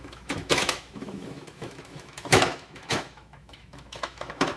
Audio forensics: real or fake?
fake